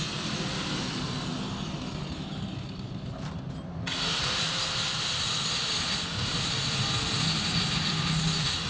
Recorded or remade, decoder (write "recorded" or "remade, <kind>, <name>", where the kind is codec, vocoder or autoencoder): recorded